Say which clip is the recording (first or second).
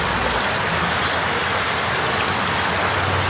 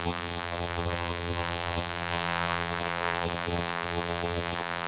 first